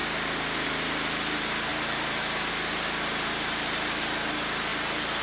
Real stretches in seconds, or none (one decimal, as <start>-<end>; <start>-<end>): 0.0-5.2